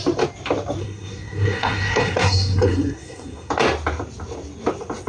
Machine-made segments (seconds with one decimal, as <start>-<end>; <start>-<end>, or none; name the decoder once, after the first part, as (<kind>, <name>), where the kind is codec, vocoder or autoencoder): 0.8-3.5 (codec, SNAC)